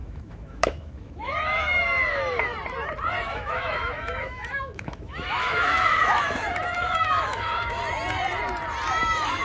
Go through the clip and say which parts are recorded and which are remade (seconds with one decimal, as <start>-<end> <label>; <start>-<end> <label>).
0.0-2.5 remade; 2.5-3.2 recorded; 3.2-7.8 remade; 7.8-8.9 recorded; 8.9-9.4 remade